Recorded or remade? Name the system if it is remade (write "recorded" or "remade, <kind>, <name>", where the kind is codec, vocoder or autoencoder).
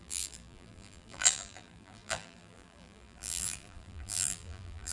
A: remade, vocoder, BigVGAN v2